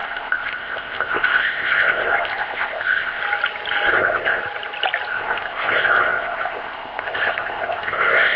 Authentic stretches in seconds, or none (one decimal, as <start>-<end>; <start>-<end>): 3.2-3.9; 4.4-5.1